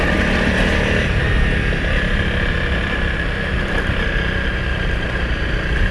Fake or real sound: real